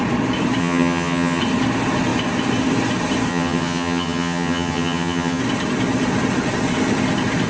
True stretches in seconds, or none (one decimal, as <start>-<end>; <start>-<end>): 0.0-0.6; 1.4-3.3; 5.4-7.5